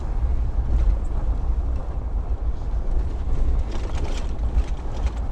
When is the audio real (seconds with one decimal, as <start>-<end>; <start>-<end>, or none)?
0.0-5.3